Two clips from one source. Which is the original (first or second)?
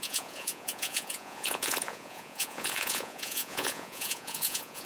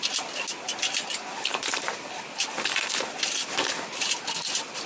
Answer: second